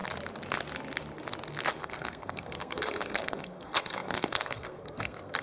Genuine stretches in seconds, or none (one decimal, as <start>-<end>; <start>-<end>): 0.0-1.7